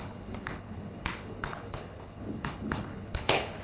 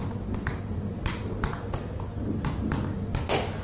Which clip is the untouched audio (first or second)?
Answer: second